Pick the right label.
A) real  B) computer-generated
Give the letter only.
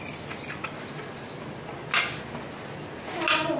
A